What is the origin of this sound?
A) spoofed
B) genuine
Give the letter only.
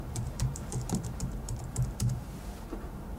A